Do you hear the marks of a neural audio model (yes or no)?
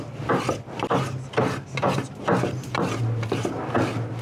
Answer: no